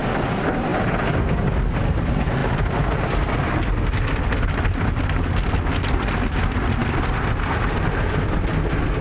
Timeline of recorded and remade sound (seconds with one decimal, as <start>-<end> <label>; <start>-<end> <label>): 0.0-9.0 recorded